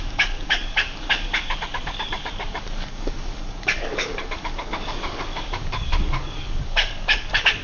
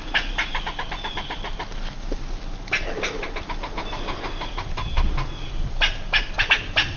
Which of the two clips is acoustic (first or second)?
second